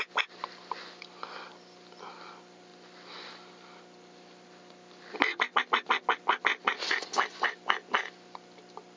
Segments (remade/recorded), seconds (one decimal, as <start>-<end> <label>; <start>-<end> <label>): 0.0-9.0 recorded